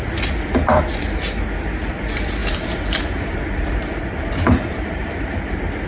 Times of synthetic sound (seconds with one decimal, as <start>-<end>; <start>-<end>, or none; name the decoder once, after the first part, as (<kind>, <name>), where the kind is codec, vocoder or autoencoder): 2.4-5.4 (vocoder, BigVGAN v2)